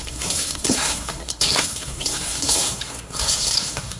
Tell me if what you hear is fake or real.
fake